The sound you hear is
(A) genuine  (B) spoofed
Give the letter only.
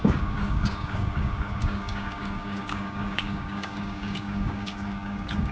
B